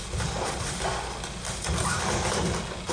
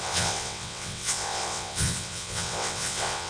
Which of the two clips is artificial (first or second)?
second